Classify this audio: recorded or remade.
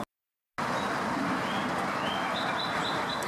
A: recorded